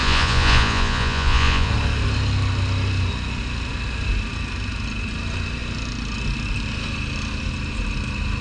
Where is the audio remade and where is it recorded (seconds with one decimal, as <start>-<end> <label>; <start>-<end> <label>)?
0.0-1.7 remade; 1.7-8.4 recorded